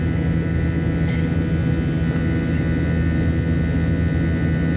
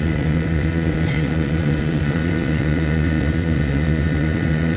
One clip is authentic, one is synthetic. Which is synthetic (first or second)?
second